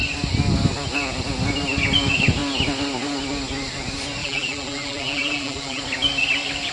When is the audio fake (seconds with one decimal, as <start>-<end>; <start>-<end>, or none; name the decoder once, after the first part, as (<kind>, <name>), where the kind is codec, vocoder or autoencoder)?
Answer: 4.2-5.8 (vocoder, BigVGAN v2)